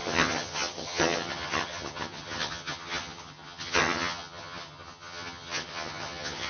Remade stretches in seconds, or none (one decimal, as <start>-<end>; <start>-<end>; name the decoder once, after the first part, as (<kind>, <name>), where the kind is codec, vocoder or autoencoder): 0.0-6.5 (vocoder, HiFi-GAN)